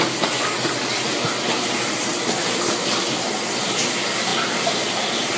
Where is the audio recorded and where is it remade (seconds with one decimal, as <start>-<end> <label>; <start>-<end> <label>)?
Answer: 0.0-5.4 recorded

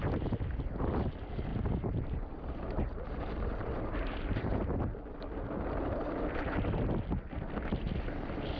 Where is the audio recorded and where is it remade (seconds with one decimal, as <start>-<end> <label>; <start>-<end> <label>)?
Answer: 0.0-1.5 recorded; 1.5-4.6 remade; 4.6-8.6 recorded

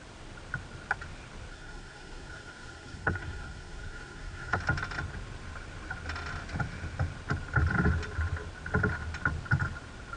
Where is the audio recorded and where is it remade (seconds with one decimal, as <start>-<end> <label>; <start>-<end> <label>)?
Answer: 0.0-1.5 recorded; 1.5-4.6 remade; 4.6-10.2 recorded

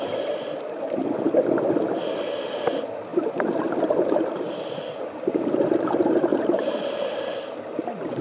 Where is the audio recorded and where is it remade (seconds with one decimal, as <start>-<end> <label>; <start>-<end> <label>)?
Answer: 0.0-3.1 recorded; 3.1-5.5 remade; 5.5-6.3 recorded; 6.3-7.5 remade; 7.5-8.2 recorded

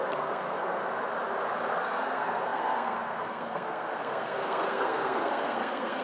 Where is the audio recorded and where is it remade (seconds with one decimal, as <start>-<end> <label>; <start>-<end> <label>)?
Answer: 0.0-0.8 remade; 0.8-1.8 recorded; 1.8-6.0 remade

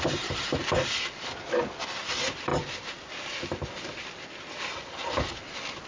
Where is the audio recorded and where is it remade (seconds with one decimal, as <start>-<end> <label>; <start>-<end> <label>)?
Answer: 0.0-5.9 recorded

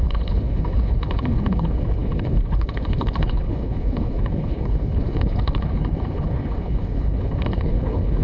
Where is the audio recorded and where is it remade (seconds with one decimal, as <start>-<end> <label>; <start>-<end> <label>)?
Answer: 0.0-8.2 remade